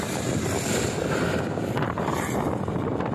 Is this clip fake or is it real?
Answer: fake